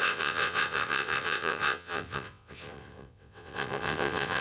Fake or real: fake